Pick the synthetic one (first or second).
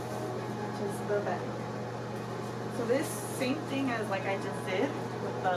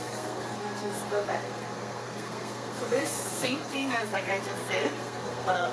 second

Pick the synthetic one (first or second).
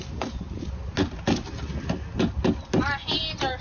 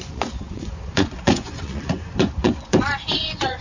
second